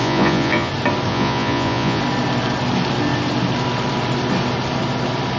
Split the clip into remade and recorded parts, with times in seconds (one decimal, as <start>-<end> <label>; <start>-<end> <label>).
0.0-0.7 remade; 0.7-1.1 recorded; 1.1-2.0 remade; 2.0-5.4 recorded